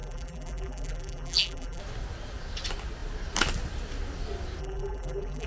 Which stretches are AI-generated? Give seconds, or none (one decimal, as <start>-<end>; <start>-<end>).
0.0-1.8; 4.6-5.5